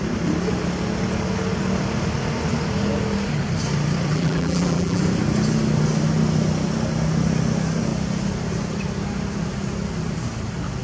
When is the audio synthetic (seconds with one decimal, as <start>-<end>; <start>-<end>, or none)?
4.1-5.0